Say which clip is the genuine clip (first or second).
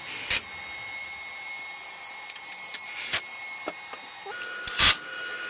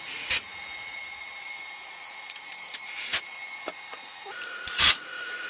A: first